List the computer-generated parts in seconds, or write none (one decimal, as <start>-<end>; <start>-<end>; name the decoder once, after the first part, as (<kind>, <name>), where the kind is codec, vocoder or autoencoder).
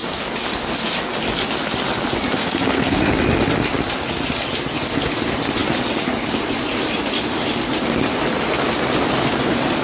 2.4-3.1 (codec, SNAC)